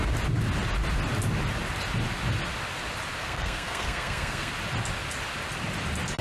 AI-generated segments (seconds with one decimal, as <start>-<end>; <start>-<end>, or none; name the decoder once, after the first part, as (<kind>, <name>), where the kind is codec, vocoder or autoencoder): 3.2-4.5 (codec, SNAC)